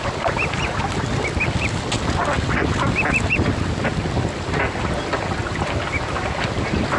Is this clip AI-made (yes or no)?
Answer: no